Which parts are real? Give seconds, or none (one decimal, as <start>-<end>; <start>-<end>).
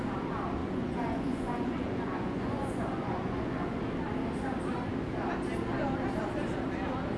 0.0-0.6; 3.8-7.2